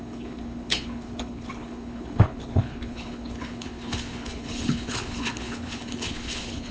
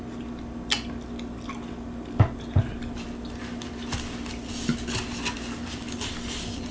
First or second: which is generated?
first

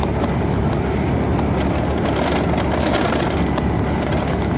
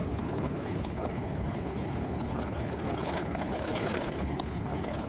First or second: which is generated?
second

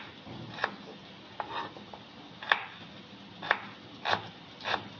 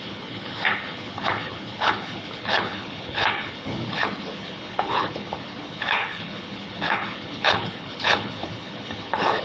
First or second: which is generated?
second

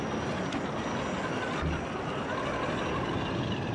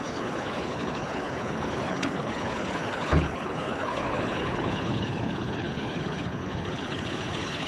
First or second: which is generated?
second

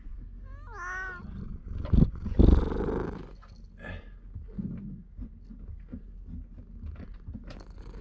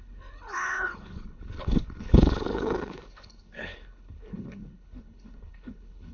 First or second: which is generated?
second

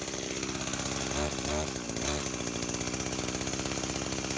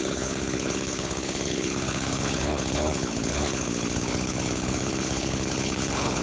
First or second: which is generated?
second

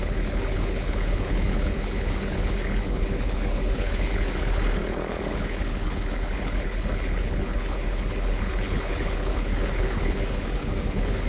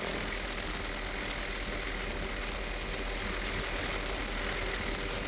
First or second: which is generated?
first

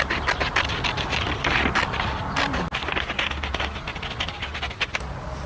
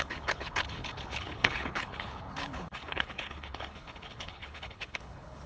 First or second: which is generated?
second